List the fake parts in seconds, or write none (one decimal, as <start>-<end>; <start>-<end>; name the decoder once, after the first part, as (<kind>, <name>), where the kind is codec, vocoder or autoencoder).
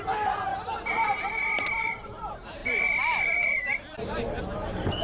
0.0-0.5 (vocoder, BigVGAN v2); 1.8-5.0